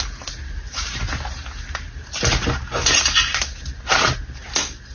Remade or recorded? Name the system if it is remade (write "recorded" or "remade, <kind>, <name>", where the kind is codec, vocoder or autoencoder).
recorded